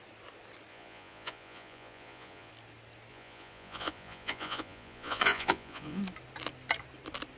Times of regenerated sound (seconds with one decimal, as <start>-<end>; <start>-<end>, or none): 0.7-2.5; 3.1-6.0

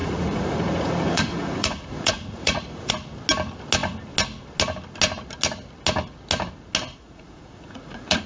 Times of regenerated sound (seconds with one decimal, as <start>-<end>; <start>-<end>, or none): 0.0-2.9; 6.9-8.3

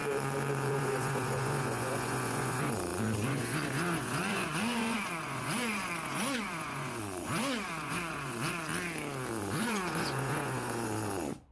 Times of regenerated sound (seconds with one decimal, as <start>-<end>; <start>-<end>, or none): 0.7-8.7; 9.3-11.5